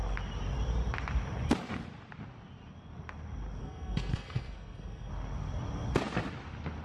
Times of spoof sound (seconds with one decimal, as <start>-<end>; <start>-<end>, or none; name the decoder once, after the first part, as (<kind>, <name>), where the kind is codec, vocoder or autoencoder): 3.6-5.1 (codec, SNAC)